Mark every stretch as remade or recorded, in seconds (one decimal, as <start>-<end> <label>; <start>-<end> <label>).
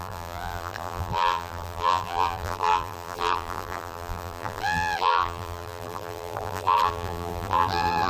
0.0-8.1 remade